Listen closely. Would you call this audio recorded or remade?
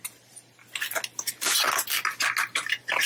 recorded